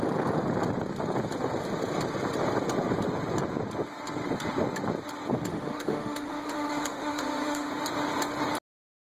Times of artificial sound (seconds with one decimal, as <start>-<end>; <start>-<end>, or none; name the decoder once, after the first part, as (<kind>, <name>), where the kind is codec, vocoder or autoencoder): 5.5-7.7 (autoencoder, DAC-VAE)